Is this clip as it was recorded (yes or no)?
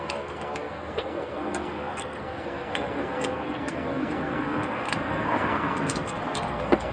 no